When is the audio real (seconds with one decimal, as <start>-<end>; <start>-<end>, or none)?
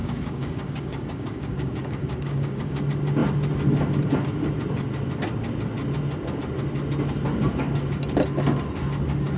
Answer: 2.8-9.4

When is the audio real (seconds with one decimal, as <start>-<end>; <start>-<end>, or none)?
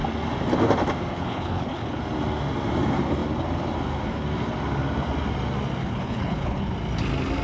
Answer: 0.0-1.1; 2.0-5.8; 6.7-7.4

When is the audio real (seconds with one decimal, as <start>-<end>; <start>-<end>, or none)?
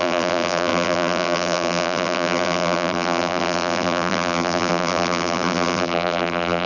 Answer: none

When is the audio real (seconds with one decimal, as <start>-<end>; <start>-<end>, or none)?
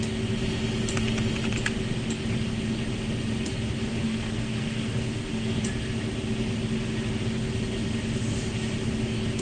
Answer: 0.0-3.8; 5.6-9.4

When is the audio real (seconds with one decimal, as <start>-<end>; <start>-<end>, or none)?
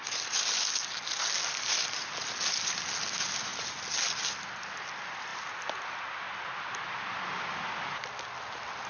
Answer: 0.0-8.9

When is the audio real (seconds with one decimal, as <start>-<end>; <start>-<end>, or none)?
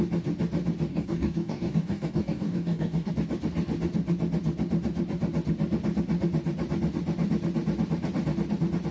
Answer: 0.0-0.9; 3.1-8.9